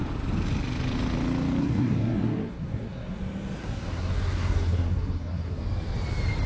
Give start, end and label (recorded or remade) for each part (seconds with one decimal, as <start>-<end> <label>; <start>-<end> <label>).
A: 0.0-1.6 recorded; 1.6-3.2 remade; 3.2-3.6 recorded; 3.6-5.6 remade; 5.6-6.5 recorded